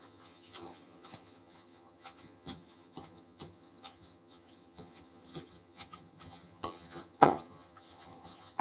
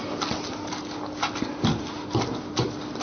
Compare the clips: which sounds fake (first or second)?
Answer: first